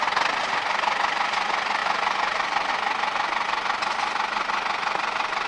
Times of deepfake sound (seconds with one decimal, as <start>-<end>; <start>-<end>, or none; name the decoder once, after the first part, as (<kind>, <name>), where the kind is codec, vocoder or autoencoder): none